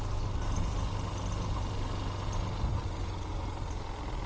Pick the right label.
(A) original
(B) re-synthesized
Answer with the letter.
A